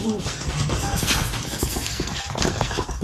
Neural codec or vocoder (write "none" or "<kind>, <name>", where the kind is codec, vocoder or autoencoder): codec, SNAC